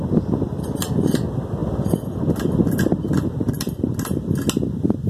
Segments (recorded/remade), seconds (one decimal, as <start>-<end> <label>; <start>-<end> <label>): 0.0-5.1 recorded